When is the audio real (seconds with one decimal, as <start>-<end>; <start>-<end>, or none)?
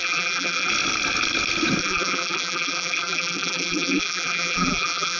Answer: 0.7-1.8